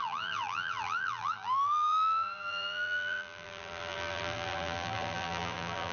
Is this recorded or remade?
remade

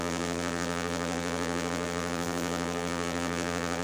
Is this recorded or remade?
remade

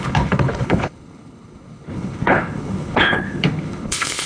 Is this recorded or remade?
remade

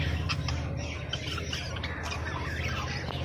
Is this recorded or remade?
recorded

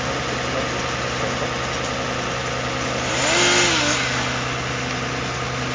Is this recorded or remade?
recorded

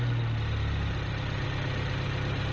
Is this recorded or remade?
recorded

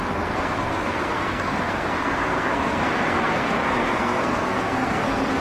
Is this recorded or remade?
remade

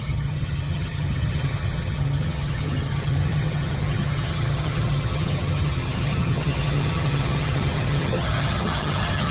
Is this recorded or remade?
remade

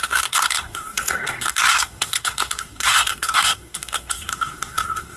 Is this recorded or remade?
remade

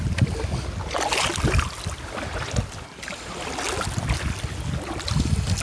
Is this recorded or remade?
recorded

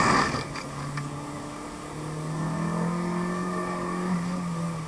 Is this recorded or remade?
remade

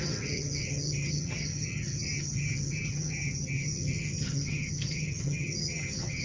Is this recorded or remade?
remade